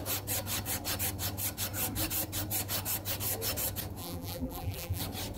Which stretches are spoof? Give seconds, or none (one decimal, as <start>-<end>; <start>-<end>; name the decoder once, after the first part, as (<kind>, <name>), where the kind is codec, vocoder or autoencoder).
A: 4.0-5.0 (vocoder, BigVGAN v2)